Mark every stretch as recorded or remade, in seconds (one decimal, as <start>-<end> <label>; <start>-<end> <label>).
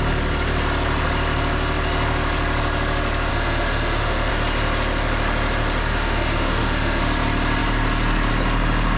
0.0-3.3 recorded; 3.3-4.3 remade; 4.3-5.8 recorded; 5.8-7.0 remade; 7.0-9.0 recorded